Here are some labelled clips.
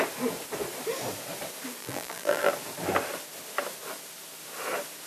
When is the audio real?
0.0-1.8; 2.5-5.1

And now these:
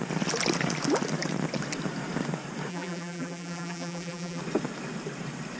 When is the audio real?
0.0-2.7; 4.4-5.6